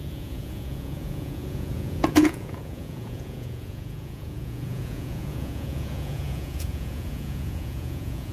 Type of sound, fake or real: fake